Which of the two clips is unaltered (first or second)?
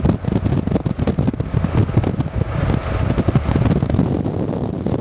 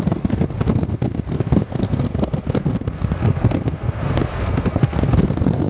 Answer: first